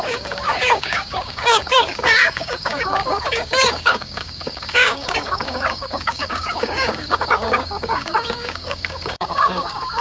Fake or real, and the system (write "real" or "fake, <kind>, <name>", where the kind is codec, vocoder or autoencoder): fake, codec, DAC